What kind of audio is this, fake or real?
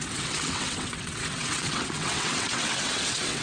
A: fake